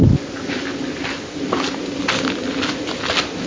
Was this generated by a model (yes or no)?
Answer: no